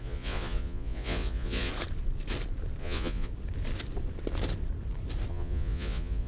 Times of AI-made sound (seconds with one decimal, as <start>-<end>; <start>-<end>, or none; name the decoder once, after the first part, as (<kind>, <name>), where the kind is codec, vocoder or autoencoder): 0.0-1.7 (vocoder, Vocos); 2.8-3.3; 5.3-6.3